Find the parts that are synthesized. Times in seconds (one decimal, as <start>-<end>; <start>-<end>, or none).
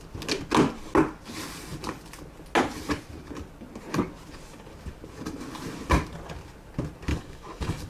7.1-7.9